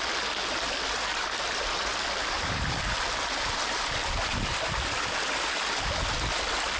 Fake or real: real